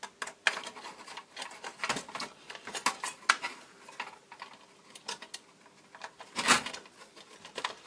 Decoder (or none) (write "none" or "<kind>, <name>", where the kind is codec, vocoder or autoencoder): none